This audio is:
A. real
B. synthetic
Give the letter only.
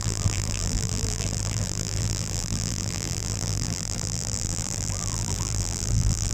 B